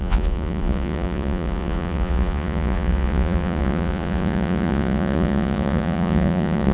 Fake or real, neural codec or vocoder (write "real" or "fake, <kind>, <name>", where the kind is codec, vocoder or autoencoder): fake, vocoder, Vocos